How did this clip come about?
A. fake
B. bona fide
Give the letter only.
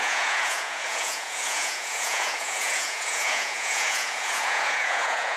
A